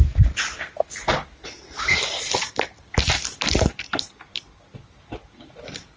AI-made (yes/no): no